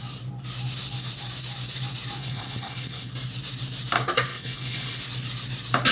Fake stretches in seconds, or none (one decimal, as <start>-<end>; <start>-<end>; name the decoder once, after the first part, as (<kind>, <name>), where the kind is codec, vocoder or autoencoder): 2.2-3.1 (codec, HILCodec); 4.3-5.0